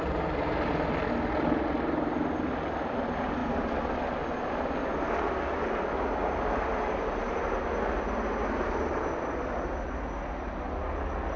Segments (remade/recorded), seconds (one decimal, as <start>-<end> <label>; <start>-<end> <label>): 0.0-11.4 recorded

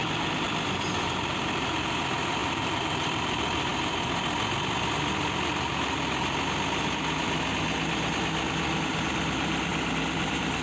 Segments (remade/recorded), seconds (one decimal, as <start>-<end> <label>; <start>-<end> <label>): 0.0-3.7 remade; 3.7-8.9 recorded; 8.9-9.7 remade; 9.7-10.2 recorded; 10.2-10.6 remade

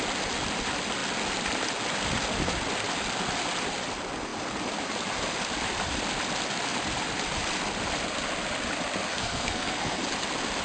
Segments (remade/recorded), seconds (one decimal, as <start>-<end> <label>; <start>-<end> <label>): 0.0-9.1 recorded; 9.1-10.0 remade; 10.0-10.6 recorded

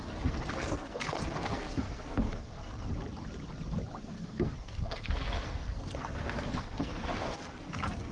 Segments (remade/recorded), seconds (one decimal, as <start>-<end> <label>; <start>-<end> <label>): 0.0-2.9 remade; 2.9-4.0 recorded; 4.0-8.1 remade

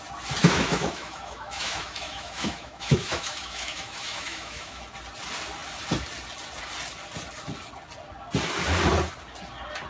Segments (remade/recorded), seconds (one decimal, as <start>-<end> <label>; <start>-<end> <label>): 0.0-0.4 recorded; 0.4-4.8 remade; 4.8-9.9 recorded

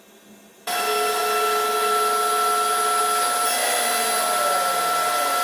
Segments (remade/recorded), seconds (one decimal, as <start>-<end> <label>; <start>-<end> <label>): 0.0-5.4 recorded

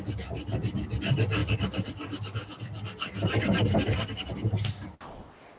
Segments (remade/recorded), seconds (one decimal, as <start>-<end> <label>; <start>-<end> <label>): 0.0-5.6 recorded